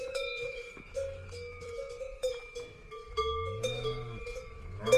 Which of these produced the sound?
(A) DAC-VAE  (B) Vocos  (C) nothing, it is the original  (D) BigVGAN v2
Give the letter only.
A